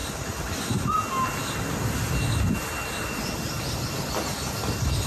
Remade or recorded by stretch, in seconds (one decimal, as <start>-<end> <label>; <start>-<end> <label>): 0.0-5.1 recorded